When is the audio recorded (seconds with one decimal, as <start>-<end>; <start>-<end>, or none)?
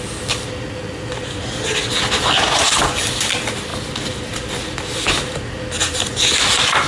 0.0-6.9